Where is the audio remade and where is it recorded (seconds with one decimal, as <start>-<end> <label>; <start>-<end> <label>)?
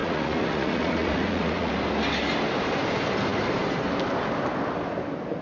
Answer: 0.0-1.7 remade; 1.7-5.4 recorded